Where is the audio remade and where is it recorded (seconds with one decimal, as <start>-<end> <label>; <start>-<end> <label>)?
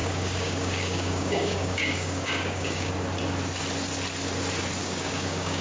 0.0-2.9 remade; 2.9-4.8 recorded; 4.8-5.6 remade